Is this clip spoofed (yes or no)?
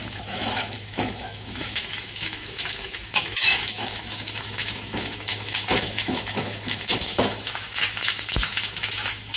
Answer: yes